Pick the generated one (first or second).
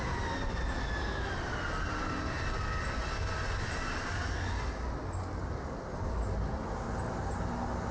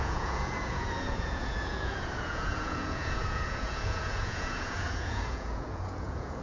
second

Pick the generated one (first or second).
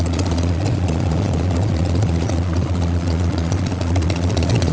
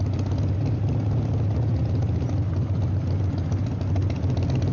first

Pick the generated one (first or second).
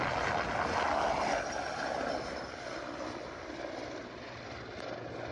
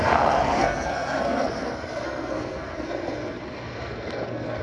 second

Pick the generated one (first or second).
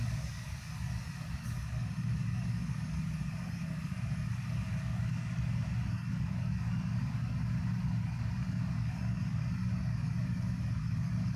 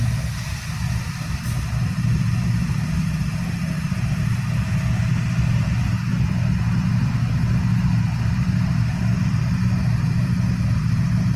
first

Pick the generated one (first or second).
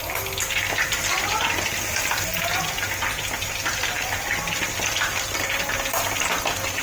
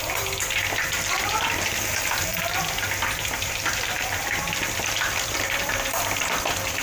second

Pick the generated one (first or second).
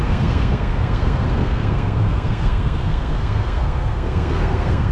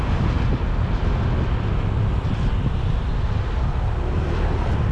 first